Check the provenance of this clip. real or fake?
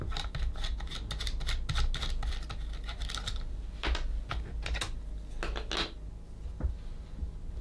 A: real